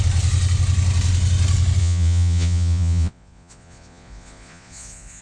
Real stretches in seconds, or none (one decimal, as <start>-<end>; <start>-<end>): 0.0-1.8